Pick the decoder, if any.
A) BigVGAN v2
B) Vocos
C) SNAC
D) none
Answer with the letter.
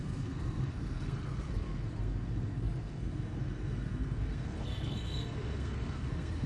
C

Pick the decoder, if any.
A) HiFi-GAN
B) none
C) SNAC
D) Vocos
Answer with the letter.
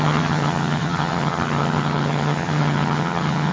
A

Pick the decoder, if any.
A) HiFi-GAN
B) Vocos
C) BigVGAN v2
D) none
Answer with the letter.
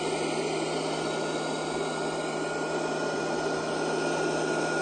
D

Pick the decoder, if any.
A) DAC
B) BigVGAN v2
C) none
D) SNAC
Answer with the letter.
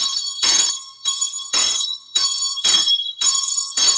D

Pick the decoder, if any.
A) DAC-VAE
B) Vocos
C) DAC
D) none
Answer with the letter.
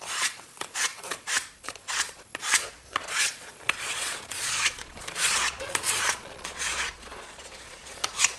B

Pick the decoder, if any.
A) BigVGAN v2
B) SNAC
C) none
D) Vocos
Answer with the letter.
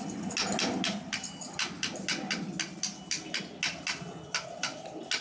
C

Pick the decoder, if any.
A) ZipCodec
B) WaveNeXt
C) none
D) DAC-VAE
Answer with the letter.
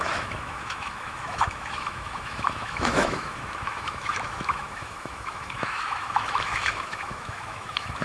D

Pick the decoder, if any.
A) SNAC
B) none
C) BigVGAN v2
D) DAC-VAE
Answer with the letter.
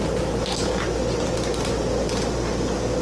B